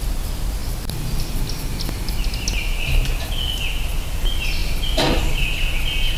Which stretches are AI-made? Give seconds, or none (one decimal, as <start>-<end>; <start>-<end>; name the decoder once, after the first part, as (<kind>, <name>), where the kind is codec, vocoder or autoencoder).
0.6-2.1 (vocoder, BigVGAN v2); 4.6-5.4